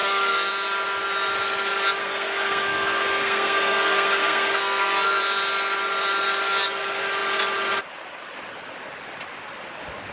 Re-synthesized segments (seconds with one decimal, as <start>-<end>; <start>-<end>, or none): 0.0-0.5; 2.0-5.2